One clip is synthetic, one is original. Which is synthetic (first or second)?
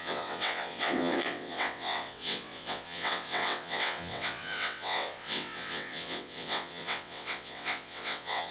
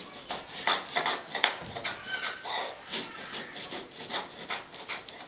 first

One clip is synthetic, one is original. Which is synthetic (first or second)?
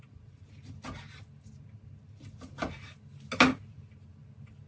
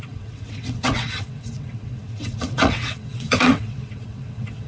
second